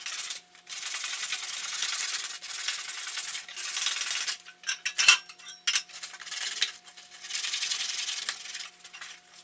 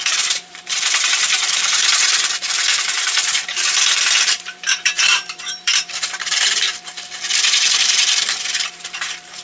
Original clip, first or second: first